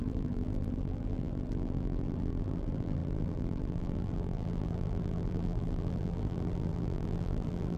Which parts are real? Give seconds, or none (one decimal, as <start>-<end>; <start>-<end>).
none